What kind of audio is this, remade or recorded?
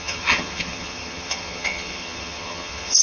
remade